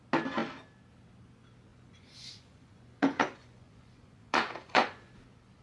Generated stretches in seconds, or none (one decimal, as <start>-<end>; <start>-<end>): 1.7-5.1